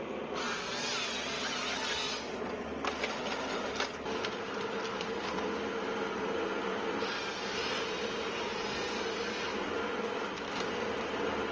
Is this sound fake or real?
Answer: real